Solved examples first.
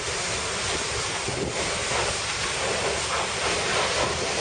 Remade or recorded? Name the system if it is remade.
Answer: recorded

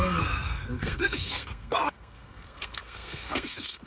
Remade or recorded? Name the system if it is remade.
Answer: remade, codec, SNAC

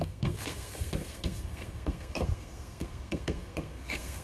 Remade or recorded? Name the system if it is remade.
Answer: remade, codec, SNAC